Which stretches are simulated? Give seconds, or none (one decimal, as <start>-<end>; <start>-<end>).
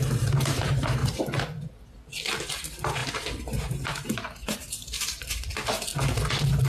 0.0-1.0; 2.3-5.9